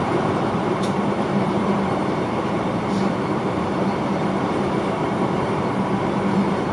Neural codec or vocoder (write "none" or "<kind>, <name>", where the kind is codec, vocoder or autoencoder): vocoder, BigVGAN v2